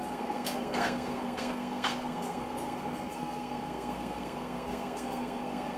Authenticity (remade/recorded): remade